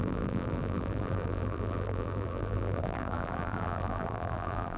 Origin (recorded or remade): remade